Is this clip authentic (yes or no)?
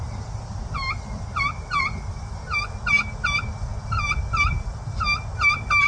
yes